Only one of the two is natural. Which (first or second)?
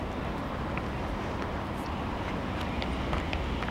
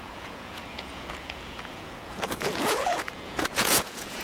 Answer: first